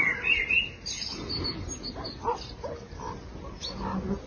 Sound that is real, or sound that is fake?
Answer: real